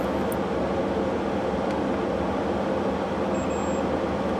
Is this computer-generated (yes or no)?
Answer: no